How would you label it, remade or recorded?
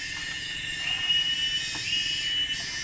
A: recorded